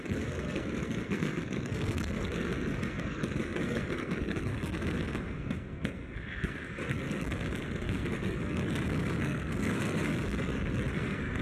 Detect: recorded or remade remade